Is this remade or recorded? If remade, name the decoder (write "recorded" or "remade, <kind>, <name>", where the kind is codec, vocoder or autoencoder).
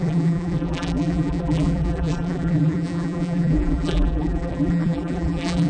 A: remade, vocoder, BigVGAN v2